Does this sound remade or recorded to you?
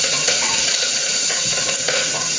remade